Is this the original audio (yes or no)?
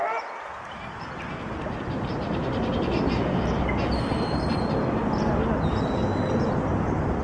yes